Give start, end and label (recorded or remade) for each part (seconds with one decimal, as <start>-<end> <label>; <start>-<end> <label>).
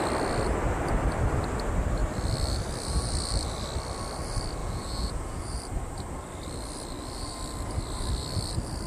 0.0-4.6 recorded; 4.6-5.6 remade; 5.6-8.9 recorded